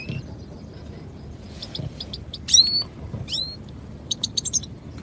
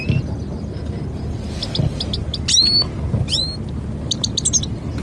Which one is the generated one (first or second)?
first